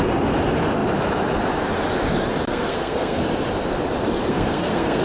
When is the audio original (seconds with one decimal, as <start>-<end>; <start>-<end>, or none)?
0.0-2.5; 3.2-4.3